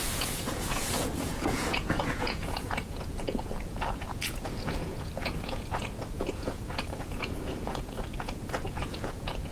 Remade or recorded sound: remade